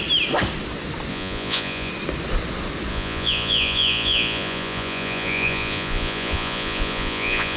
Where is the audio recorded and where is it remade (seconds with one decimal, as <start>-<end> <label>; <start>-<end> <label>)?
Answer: 0.0-1.1 recorded; 1.1-1.9 remade; 1.9-2.9 recorded; 2.9-7.6 remade